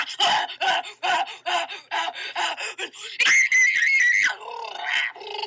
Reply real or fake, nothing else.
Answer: real